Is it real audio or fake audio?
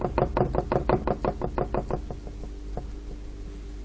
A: real